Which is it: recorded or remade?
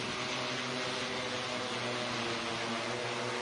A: recorded